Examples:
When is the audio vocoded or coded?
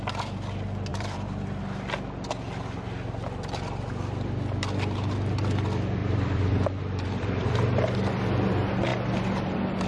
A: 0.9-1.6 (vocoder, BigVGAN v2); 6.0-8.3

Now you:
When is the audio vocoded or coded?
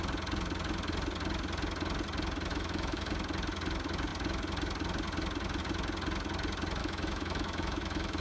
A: 2.5-3.1 (autoencoder, DAC-VAE); 6.8-8.2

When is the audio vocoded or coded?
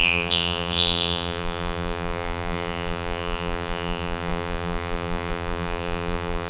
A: 0.0-6.5 (vocoder, BigVGAN v2)